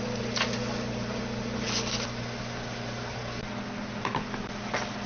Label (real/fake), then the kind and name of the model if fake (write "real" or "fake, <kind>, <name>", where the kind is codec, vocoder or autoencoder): real